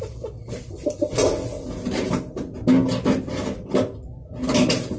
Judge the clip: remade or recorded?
recorded